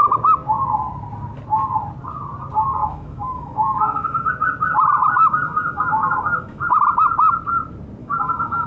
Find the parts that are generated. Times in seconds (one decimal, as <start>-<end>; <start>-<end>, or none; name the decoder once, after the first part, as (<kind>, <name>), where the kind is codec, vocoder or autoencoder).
2.8-4.3 (autoencoder, DAC-VAE); 5.2-6.8; 8.0-8.7